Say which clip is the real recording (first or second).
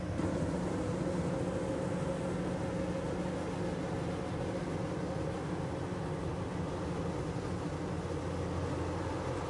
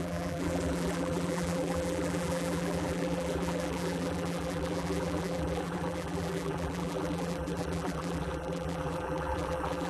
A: first